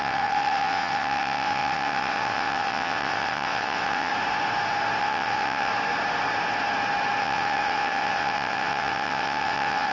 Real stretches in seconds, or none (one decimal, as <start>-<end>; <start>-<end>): 4.1-5.0; 5.7-7.2